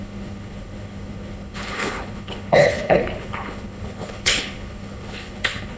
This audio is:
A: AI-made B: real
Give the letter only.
A